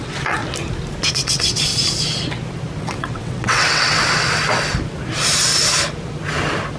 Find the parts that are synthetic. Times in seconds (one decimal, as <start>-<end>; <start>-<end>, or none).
0.0-0.4; 1.1-1.7; 2.8-4.0

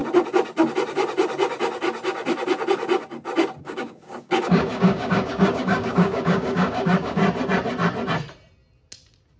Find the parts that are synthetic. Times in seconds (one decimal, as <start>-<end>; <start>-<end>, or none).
3.6-7.2

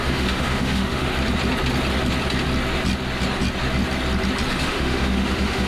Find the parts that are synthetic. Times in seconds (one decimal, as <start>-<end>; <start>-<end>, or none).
0.0-1.1; 4.5-5.7

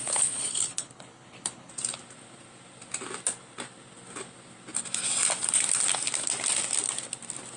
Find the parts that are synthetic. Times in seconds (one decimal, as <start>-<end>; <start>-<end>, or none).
0.0-1.7